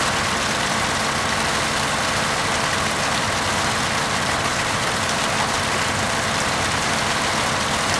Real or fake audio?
real